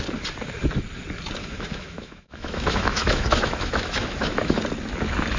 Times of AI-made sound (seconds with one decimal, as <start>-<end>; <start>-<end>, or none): 1.4-4.6